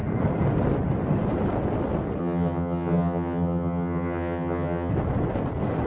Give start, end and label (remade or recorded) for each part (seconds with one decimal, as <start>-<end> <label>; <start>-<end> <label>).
0.0-2.2 recorded; 2.2-4.9 remade; 4.9-5.9 recorded